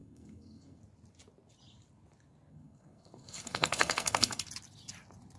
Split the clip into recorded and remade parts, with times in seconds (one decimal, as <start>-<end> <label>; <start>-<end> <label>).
0.0-0.8 remade; 0.8-2.5 recorded; 2.5-4.4 remade; 4.4-5.4 recorded